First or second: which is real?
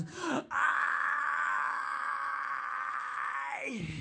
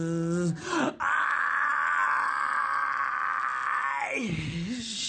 second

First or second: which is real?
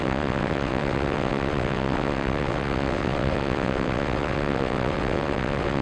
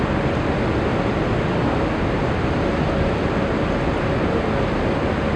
second